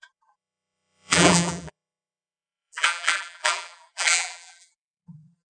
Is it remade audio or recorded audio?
remade